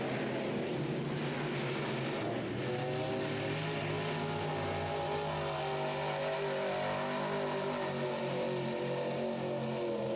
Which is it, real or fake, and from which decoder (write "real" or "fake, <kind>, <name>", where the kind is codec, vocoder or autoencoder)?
real